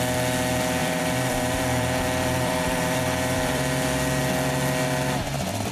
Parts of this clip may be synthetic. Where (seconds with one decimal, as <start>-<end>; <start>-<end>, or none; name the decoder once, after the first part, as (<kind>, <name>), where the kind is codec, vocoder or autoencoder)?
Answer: 0.8-4.2 (vocoder, BigVGAN v2)

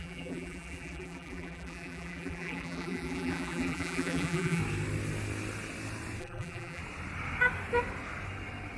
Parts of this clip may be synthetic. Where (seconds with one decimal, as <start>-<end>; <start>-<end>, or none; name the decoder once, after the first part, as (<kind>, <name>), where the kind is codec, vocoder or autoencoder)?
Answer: 0.0-4.6 (vocoder, BigVGAN v2); 6.2-6.8

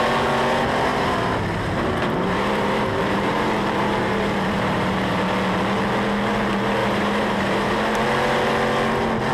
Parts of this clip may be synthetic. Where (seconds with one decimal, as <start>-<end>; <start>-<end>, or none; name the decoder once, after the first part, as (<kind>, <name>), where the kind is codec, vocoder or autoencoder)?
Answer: 0.9-5.1 (vocoder, BigVGAN v2); 6.8-8.0

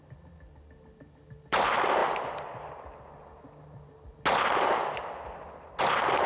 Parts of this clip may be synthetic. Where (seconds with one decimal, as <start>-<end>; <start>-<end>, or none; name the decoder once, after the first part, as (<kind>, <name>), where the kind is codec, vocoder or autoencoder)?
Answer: none

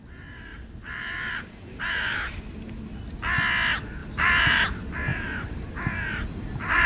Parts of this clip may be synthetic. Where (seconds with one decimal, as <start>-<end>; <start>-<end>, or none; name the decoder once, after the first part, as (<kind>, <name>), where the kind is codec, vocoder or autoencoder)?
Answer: 0.5-2.4 (vocoder, BigVGAN v2); 4.0-4.6; 5.1-5.8

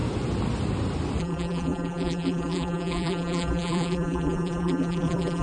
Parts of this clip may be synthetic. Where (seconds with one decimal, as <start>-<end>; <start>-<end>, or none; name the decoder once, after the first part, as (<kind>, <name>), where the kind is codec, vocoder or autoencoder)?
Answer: 1.2-5.4 (vocoder, BigVGAN v2)

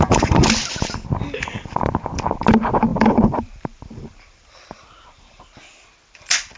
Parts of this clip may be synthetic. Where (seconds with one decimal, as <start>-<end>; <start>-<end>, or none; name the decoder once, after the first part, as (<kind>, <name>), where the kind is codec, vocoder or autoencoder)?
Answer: 2.9-5.4 (vocoder, BigVGAN v2)

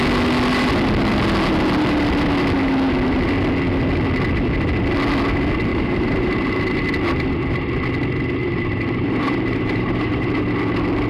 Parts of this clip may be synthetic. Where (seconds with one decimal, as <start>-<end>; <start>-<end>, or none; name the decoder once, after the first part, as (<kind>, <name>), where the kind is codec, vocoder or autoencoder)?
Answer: 5.7-6.7 (vocoder, BigVGAN v2); 8.4-10.4